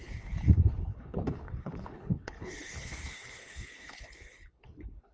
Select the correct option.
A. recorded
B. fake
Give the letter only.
B